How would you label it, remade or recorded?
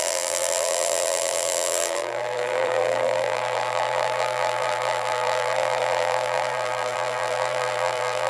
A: remade